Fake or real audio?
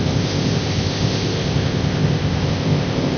fake